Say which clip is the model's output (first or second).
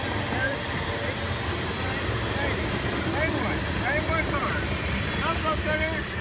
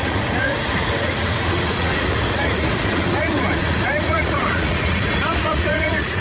second